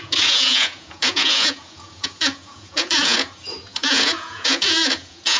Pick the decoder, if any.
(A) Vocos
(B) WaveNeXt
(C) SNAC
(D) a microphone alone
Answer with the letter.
A